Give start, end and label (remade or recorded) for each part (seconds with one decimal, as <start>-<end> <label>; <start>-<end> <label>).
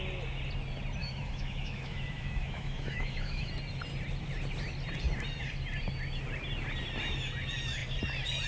0.0-1.0 recorded; 1.0-3.5 remade; 3.5-8.5 recorded